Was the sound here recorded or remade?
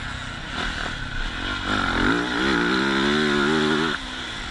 recorded